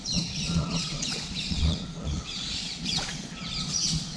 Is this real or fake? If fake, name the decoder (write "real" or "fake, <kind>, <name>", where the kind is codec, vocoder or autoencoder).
fake, vocoder, Vocos